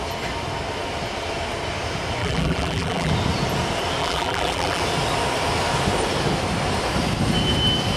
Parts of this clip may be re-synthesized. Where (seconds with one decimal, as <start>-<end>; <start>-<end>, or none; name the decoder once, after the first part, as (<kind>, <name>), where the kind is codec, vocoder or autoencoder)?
2.2-3.1 (vocoder, BigVGAN v2); 4.0-4.8